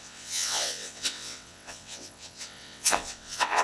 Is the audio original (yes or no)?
no